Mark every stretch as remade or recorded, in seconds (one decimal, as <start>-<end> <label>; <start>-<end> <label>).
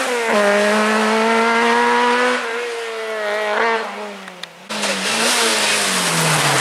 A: 0.0-6.6 recorded